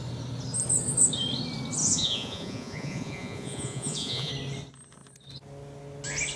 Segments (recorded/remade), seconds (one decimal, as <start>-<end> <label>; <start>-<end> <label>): 0.0-1.8 recorded; 1.8-4.3 remade; 4.3-6.4 recorded